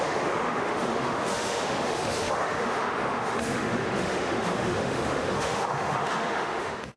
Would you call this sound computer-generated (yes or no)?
yes